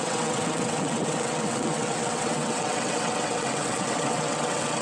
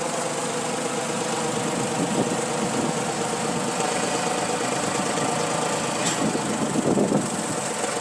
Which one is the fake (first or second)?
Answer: first